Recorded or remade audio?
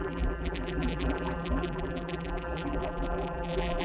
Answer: remade